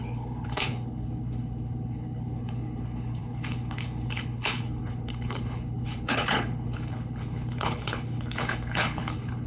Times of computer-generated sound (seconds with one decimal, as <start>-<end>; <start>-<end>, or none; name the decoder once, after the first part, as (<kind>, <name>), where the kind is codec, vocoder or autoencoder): 0.0-9.5 (codec, HILCodec)

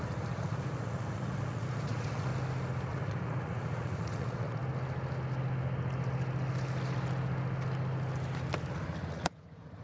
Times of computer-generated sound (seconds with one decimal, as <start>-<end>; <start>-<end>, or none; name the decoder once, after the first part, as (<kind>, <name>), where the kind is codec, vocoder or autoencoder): 0.0-2.3 (vocoder, Vocos); 2.9-4.6; 8.7-9.8

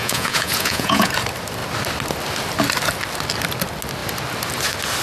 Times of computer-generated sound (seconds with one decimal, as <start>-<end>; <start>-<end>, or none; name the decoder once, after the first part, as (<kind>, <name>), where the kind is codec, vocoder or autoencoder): 0.0-1.1 (vocoder, Vocos)

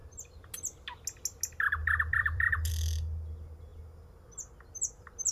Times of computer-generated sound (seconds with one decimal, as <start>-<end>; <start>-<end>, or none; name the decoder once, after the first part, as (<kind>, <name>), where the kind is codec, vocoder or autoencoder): 1.8-2.7 (vocoder, BigVGAN v2)

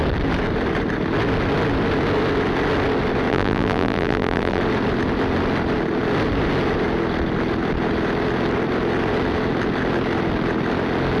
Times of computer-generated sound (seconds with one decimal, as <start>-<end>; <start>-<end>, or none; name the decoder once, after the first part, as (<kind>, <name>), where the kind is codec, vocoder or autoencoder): 3.3-4.6 (vocoder, BigVGAN v2)

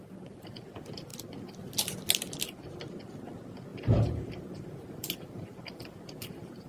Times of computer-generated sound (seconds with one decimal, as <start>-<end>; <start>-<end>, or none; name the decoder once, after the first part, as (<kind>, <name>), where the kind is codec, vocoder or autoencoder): 3.7-6.7 (vocoder, BigVGAN v2)